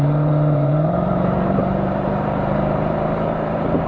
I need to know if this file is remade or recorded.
remade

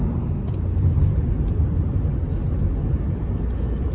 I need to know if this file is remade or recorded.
recorded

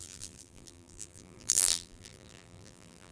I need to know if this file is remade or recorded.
remade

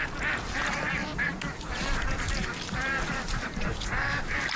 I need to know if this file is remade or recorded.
remade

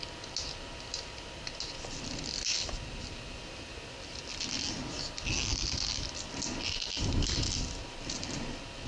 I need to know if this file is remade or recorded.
recorded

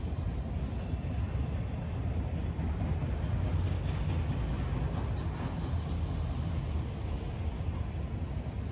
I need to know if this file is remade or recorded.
recorded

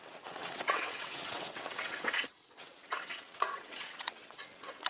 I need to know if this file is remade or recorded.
remade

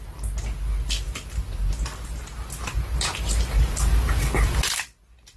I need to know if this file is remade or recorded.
recorded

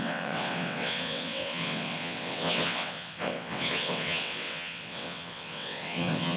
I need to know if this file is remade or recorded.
remade